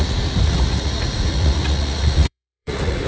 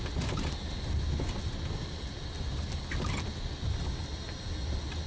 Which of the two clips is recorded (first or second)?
second